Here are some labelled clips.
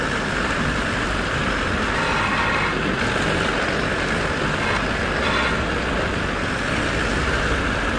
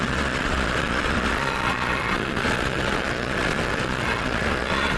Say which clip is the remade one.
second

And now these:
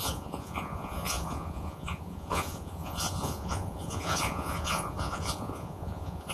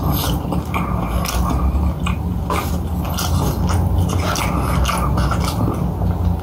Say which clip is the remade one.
first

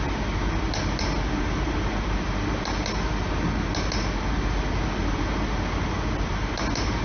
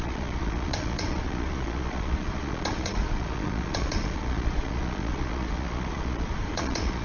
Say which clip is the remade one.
second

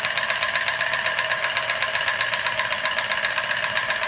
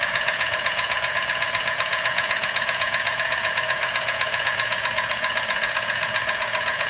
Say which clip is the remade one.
second